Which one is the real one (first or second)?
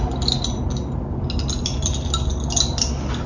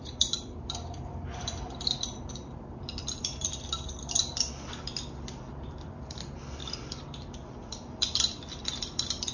first